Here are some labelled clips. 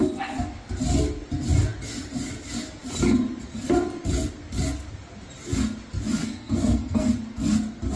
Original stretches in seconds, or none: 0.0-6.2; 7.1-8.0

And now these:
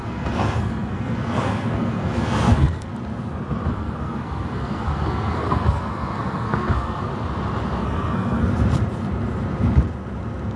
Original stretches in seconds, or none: 2.9-3.7; 7.1-7.8; 8.5-10.6

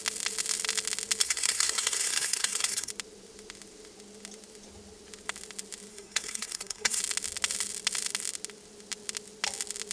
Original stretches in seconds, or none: 0.0-1.2; 2.9-5.9; 7.0-9.9

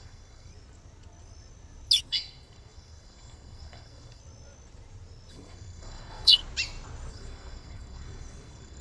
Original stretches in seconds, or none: 0.5-2.1; 4.2-5.3; 6.4-7.1

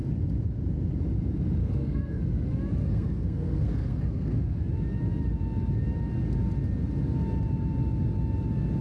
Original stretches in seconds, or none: 0.0-1.6; 2.2-2.8; 4.6-8.8